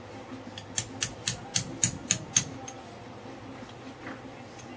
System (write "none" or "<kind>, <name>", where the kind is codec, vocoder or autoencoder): none